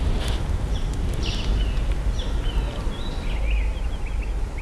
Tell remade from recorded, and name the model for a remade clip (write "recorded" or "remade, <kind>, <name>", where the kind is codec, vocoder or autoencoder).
recorded